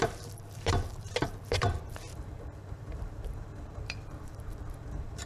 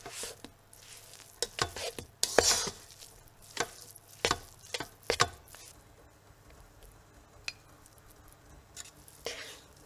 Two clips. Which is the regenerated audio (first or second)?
first